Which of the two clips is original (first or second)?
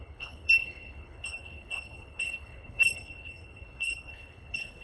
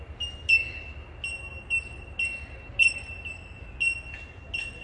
second